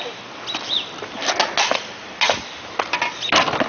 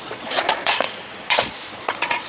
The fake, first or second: second